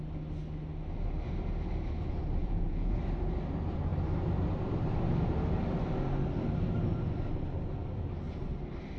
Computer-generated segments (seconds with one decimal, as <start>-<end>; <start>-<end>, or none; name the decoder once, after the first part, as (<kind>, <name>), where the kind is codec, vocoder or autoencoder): 2.4-3.0 (vocoder, Vocos)

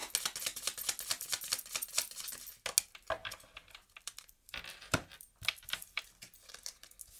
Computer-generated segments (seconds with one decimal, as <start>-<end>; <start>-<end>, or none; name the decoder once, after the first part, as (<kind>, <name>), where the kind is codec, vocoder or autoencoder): 3.2-6.5 (vocoder, BigVGAN v2)

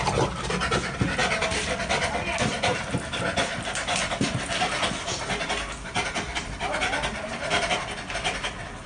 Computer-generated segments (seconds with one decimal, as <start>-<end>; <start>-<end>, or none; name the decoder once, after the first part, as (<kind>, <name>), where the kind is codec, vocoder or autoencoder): none